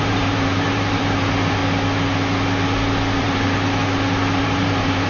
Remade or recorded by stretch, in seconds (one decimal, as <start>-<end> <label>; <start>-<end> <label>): 0.0-1.6 remade; 1.6-3.2 recorded; 3.2-3.8 remade; 3.8-4.4 recorded; 4.4-5.1 remade